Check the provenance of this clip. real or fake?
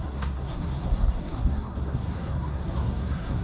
fake